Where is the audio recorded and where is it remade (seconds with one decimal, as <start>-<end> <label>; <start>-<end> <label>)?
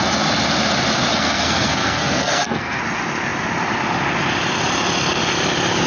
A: 0.0-1.1 recorded; 1.1-2.8 remade; 2.8-5.9 recorded